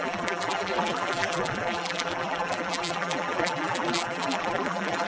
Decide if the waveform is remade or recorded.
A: remade